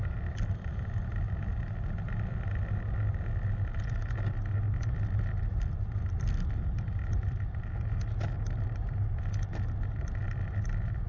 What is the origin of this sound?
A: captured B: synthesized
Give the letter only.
A